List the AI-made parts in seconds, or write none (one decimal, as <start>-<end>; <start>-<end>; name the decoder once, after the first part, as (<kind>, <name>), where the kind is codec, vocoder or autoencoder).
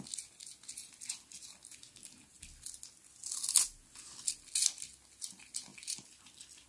none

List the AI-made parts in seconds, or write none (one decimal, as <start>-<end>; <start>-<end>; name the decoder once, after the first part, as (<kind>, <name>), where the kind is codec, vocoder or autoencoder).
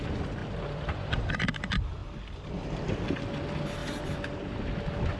0.4-1.5 (vocoder, BigVGAN v2); 2.0-2.5; 3.8-4.6